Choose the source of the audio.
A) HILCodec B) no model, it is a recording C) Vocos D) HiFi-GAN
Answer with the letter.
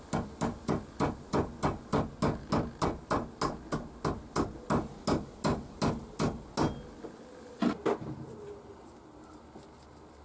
B